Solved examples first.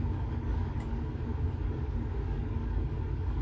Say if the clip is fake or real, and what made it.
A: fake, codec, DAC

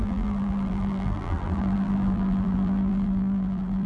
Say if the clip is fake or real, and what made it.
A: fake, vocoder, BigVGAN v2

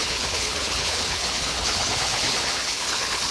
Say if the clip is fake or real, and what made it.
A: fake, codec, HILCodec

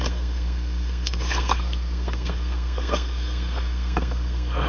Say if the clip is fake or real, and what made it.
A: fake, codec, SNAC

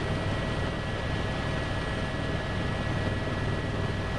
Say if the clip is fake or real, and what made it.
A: real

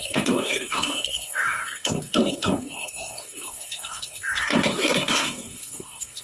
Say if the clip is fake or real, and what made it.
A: fake, codec, SNAC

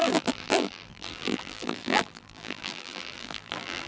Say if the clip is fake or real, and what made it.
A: fake, vocoder, BigVGAN v2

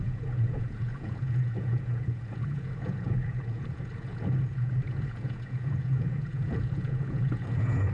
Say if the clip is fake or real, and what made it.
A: fake, vocoder, Vocos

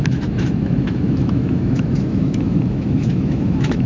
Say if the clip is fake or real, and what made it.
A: fake, autoencoder, DAC-VAE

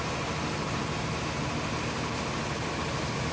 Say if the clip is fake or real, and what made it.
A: real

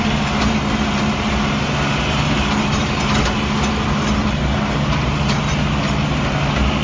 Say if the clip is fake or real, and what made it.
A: real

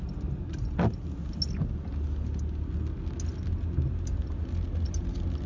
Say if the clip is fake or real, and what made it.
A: real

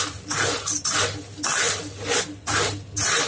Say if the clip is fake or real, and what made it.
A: real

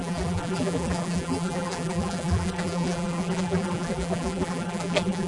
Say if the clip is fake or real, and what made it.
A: fake, vocoder, BigVGAN v2